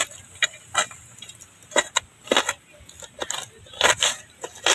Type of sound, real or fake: real